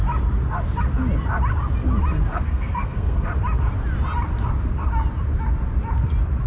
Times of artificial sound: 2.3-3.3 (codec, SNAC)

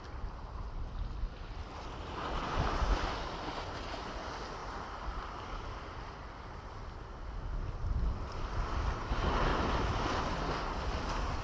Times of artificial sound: 9.5-10.2 (vocoder, BigVGAN v2)

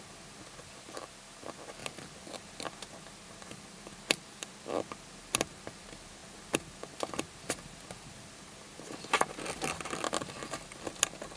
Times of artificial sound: none

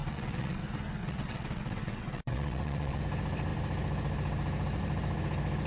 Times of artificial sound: 0.0-0.6 (vocoder, WaveNeXt); 1.0-3.0